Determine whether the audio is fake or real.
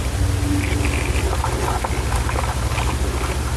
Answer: real